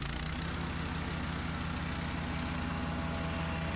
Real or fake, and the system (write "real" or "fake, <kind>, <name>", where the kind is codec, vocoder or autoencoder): real